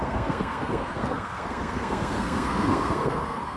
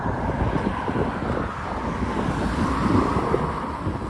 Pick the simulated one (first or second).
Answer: first